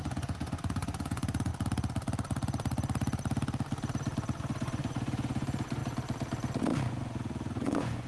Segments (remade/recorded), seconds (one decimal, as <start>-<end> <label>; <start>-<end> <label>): 0.0-1.5 remade; 1.5-4.4 recorded; 4.4-5.8 remade; 5.8-6.9 recorded; 6.9-8.1 remade